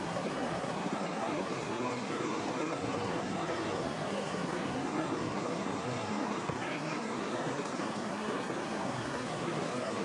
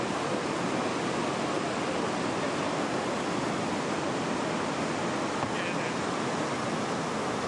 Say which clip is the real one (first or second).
second